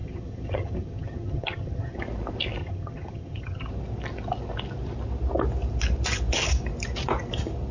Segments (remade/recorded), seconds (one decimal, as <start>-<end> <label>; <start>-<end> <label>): 0.0-2.0 remade; 2.0-2.6 recorded; 2.6-3.7 remade; 3.7-7.7 recorded

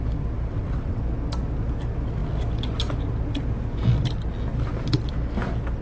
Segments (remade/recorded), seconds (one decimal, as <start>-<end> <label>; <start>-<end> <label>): 0.0-0.5 recorded; 0.5-1.0 remade; 1.0-5.8 recorded

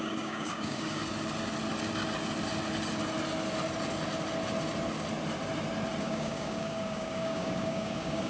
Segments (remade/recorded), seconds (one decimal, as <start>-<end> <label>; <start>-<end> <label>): 0.0-1.0 remade; 1.0-6.0 recorded; 6.0-8.3 remade

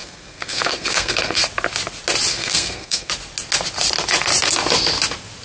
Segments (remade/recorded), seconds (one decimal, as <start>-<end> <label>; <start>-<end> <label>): 0.0-1.4 remade; 1.4-2.3 recorded; 2.3-3.1 remade; 3.1-5.4 recorded

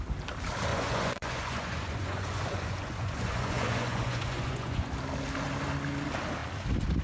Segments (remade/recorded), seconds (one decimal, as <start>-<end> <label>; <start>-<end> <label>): 0.0-0.7 recorded; 0.7-4.9 remade; 4.9-7.0 recorded